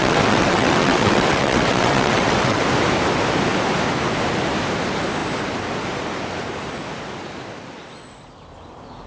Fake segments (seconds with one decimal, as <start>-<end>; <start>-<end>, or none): 0.0-2.6